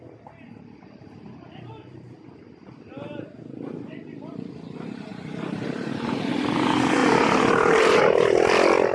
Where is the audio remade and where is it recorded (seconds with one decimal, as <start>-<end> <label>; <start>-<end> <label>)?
0.0-5.1 recorded; 5.1-6.3 remade; 6.3-7.0 recorded; 7.0-8.0 remade; 8.0-8.9 recorded